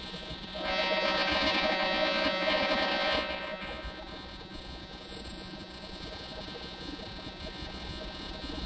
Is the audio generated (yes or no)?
yes